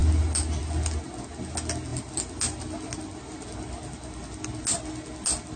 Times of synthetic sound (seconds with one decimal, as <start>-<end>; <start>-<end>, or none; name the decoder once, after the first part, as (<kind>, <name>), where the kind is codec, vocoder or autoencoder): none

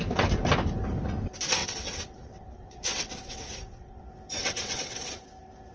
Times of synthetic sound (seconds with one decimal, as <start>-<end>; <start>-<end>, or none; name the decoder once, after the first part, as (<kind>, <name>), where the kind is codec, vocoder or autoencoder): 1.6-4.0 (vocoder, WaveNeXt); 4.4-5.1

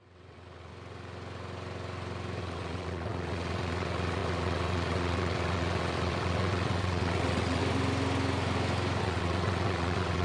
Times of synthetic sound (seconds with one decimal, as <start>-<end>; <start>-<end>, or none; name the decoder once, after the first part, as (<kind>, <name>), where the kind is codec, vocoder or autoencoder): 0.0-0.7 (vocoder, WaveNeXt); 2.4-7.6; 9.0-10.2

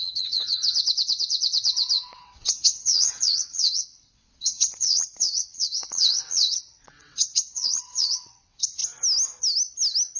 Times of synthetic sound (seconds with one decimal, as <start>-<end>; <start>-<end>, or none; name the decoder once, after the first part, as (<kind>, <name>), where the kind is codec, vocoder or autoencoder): 0.0-8.8 (vocoder, WaveNeXt)

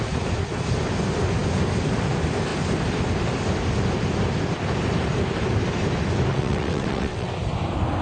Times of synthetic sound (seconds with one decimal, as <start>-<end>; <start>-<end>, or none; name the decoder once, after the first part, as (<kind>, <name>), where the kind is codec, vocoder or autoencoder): 6.3-7.3 (vocoder, WaveNeXt)

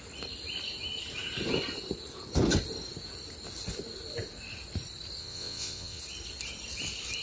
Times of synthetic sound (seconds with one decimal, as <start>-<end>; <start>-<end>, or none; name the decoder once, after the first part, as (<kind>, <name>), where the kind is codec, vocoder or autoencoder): 5.2-6.0 (vocoder, WaveNeXt)

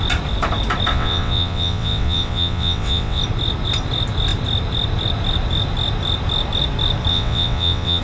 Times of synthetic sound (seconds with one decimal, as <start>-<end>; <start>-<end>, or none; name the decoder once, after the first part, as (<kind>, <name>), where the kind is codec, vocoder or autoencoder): 0.9-3.2 (vocoder, WaveNeXt); 7.1-8.0

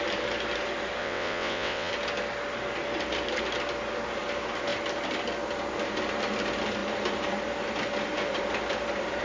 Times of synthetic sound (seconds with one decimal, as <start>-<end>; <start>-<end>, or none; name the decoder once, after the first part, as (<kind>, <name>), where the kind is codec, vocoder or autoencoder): 1.0-1.9 (vocoder, WaveNeXt)